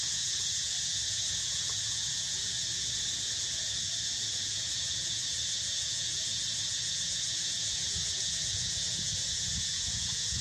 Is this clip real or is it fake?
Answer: fake